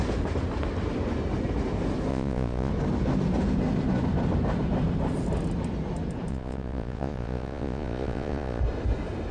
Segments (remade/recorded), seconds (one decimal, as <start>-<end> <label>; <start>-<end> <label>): 0.0-2.1 recorded; 2.1-2.7 remade; 2.7-6.3 recorded; 6.3-8.6 remade; 8.6-9.3 recorded